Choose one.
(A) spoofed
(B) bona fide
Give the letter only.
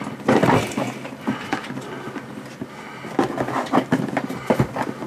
B